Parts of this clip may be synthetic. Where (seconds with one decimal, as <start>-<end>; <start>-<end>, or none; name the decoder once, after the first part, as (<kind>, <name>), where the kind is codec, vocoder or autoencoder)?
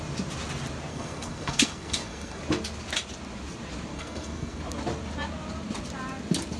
0.9-2.4 (codec, SNAC); 3.9-4.6